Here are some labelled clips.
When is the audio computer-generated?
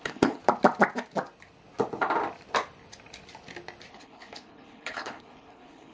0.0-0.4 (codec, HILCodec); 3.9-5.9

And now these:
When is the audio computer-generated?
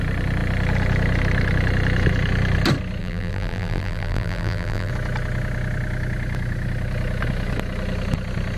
3.0-4.9 (vocoder, BigVGAN v2)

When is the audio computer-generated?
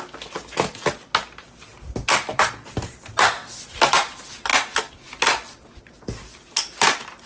none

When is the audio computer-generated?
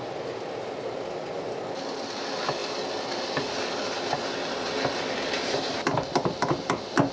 none